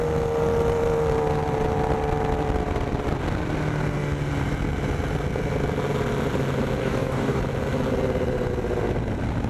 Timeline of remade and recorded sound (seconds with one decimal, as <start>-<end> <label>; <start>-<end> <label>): 0.0-6.8 recorded; 6.8-7.4 remade; 7.4-9.5 recorded